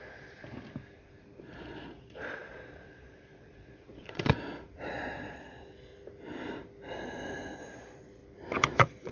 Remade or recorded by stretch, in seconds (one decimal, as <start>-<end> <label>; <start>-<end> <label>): 0.0-0.4 remade; 0.4-1.4 recorded; 1.4-5.9 remade; 5.9-7.5 recorded; 7.5-8.2 remade; 8.2-8.7 recorded; 8.7-9.1 remade